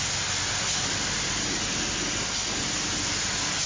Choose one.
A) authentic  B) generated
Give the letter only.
A